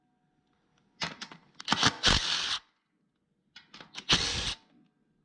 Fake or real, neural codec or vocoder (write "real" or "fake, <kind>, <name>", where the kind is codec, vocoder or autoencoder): real